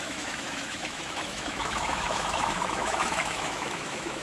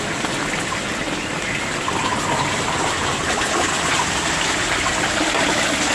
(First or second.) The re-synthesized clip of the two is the first